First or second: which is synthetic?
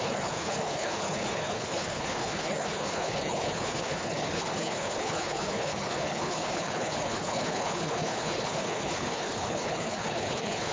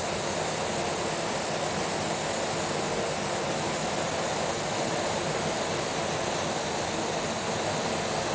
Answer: first